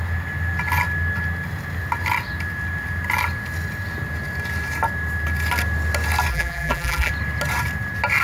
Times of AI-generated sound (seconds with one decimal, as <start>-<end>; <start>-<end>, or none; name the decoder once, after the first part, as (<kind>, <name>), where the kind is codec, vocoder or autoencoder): 6.3-7.1 (vocoder, BigVGAN v2)